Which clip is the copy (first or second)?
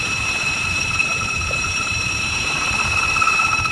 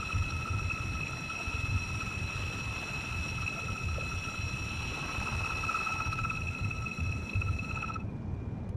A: first